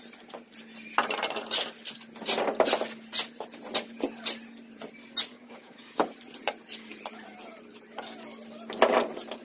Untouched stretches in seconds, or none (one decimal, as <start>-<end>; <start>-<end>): 0.0-5.3; 6.0-9.4